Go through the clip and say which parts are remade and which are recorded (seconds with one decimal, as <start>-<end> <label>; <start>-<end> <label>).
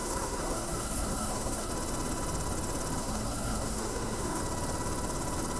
0.0-1.7 remade; 1.7-3.0 recorded; 3.0-4.4 remade; 4.4-5.6 recorded